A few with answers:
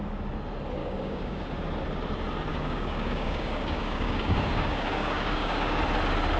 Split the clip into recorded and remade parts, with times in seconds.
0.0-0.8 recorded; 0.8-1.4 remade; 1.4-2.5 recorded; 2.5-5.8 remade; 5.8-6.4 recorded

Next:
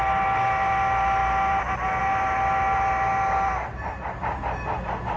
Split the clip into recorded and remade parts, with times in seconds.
0.0-5.2 recorded

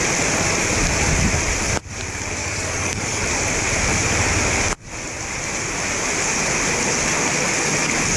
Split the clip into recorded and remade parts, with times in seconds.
0.0-2.4 recorded; 2.4-3.2 remade; 3.2-8.2 recorded

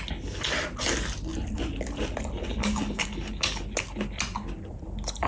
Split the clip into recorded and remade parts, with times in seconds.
0.0-2.6 recorded; 2.6-3.6 remade; 3.6-5.3 recorded

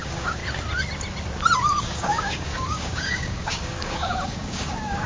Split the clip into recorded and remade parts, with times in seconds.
0.0-0.4 remade; 0.4-1.8 recorded; 1.8-5.1 remade

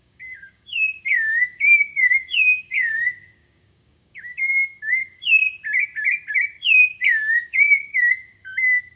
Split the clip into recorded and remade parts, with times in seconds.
0.0-5.4 remade; 5.4-6.3 recorded; 6.3-9.0 remade

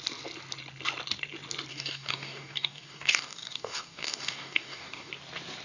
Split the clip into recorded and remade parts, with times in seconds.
0.0-1.7 recorded; 1.7-5.1 remade; 5.1-5.6 recorded

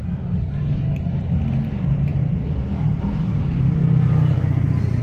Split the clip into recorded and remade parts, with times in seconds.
0.0-5.0 recorded